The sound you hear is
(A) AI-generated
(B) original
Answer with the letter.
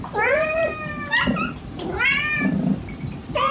B